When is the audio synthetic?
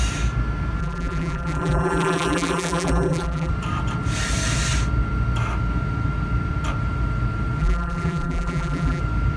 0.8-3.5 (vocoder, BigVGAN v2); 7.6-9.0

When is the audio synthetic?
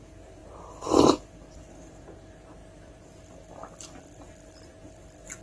0.0-2.6 (vocoder, BigVGAN v2)